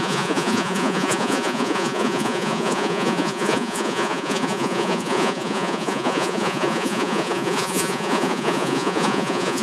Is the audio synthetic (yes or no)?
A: yes